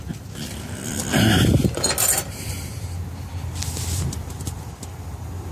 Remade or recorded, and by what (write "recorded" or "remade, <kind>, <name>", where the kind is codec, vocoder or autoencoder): recorded